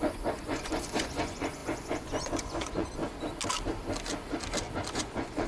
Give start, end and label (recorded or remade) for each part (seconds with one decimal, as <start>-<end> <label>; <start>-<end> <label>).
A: 0.0-3.0 remade; 3.0-4.9 recorded; 4.9-5.5 remade